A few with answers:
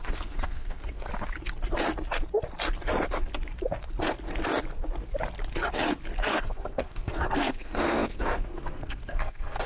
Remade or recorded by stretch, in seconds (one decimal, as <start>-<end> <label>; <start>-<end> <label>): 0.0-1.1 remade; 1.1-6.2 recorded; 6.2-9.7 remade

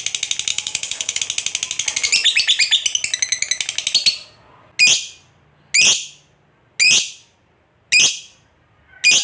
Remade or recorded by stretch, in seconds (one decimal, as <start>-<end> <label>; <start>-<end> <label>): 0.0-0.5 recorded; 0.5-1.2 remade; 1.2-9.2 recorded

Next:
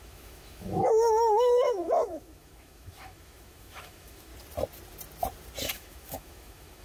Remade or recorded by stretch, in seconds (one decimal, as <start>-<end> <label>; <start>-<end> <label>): 0.0-4.3 remade; 4.3-5.7 recorded; 5.7-6.8 remade

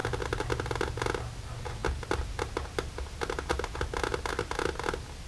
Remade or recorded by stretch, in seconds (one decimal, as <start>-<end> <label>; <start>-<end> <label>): 0.0-5.3 recorded

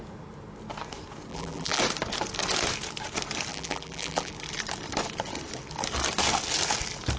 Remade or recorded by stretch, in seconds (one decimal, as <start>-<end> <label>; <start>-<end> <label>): 0.0-1.3 recorded; 1.3-1.8 remade; 1.8-3.5 recorded; 3.5-4.3 remade; 4.3-7.2 recorded

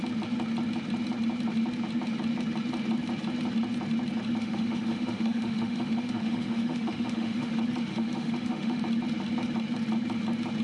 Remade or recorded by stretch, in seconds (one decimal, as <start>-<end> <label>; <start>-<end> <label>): 0.0-4.4 recorded; 4.4-7.5 remade; 7.5-7.9 recorded; 7.9-8.8 remade; 8.8-10.6 recorded